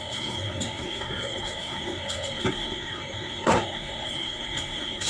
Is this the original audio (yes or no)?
no